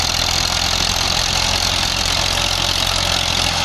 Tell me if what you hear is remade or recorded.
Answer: remade